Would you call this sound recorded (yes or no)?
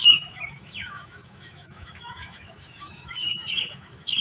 no